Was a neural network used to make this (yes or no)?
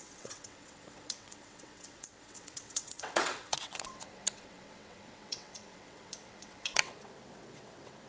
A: yes